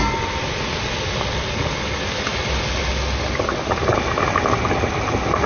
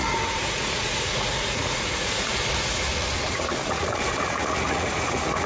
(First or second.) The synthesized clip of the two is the second